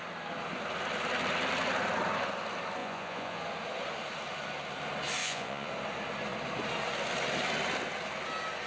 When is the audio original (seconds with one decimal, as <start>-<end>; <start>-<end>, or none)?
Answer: 0.0-2.8; 3.4-5.2; 5.7-8.7